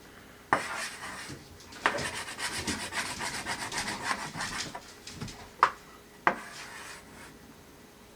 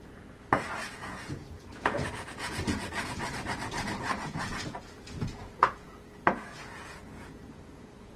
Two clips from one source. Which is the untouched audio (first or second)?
first